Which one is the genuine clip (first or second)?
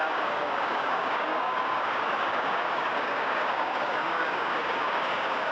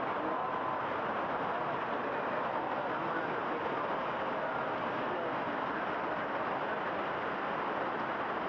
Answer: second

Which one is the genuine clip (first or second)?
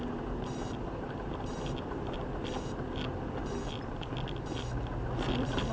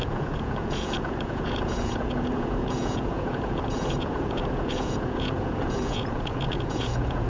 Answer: first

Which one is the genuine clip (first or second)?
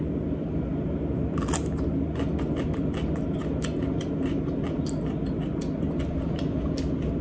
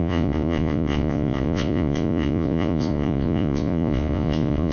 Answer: first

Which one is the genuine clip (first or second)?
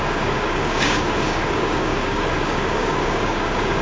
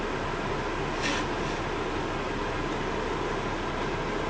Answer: second